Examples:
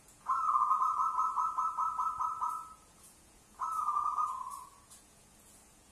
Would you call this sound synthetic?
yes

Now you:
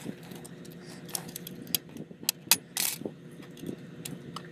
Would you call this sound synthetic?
no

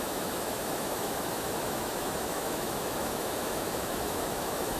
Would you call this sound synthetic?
yes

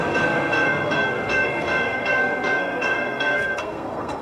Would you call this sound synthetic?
yes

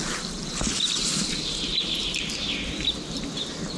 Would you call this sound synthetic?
no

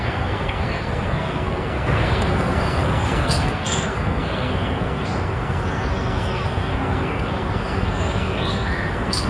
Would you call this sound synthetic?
yes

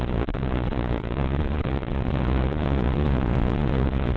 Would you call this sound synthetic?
yes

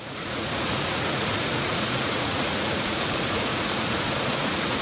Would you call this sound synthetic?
yes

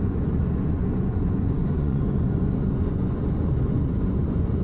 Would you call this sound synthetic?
yes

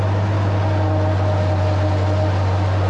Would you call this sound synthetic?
no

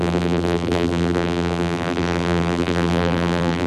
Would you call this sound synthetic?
yes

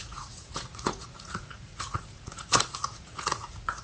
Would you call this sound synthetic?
yes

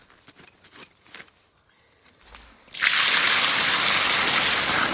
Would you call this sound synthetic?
no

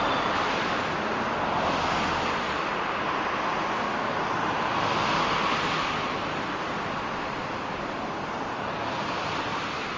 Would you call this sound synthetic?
no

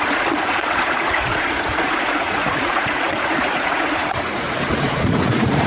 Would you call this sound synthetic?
yes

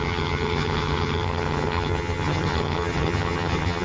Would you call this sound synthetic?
yes